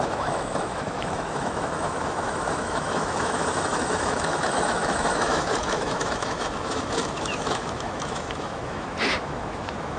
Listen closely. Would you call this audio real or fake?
fake